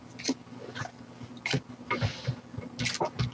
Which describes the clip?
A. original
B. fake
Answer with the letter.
A